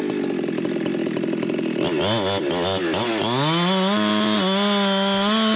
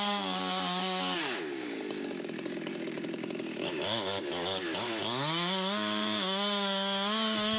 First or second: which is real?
first